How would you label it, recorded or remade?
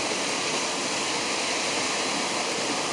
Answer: recorded